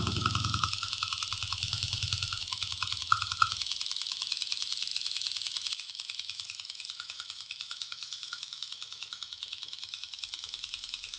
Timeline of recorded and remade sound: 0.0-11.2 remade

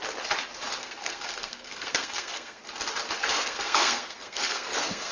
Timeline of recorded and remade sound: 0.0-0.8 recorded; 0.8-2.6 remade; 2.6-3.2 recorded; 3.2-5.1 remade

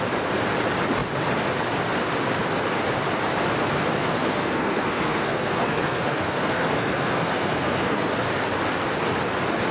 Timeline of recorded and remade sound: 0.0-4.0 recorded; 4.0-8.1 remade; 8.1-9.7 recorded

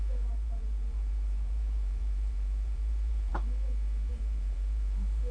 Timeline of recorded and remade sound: 0.0-3.3 remade; 3.3-4.1 recorded; 4.1-5.3 remade

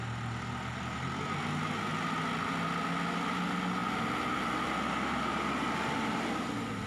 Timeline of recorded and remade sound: 0.0-6.9 recorded

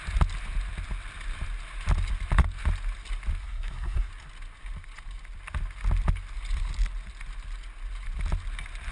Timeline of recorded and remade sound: 0.0-3.4 recorded; 3.4-4.1 remade; 4.1-8.9 recorded

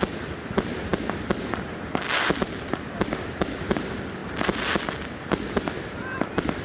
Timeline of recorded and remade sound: 0.0-6.6 recorded

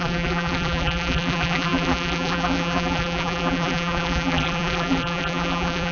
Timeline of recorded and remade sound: 0.0-5.9 remade